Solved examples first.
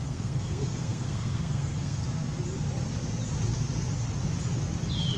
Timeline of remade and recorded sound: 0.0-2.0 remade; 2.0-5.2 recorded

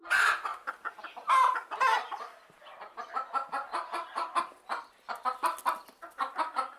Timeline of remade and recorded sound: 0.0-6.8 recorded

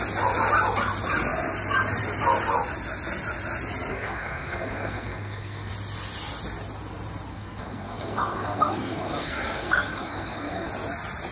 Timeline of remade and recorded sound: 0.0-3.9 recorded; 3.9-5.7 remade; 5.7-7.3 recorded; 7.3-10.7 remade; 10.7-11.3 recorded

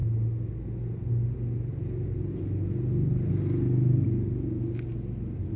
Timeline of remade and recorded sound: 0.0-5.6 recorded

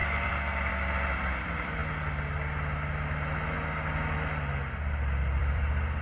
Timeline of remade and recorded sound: 0.0-1.8 remade; 1.8-5.4 recorded; 5.4-6.0 remade

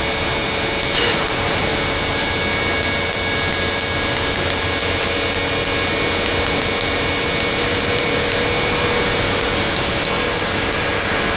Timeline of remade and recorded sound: 0.0-11.4 recorded

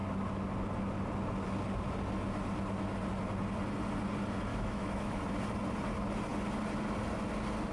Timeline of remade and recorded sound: 0.0-4.5 recorded; 4.5-5.2 remade; 5.2-7.7 recorded

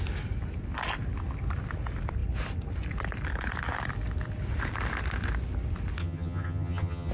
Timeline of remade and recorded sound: 0.0-6.0 recorded; 6.0-7.1 remade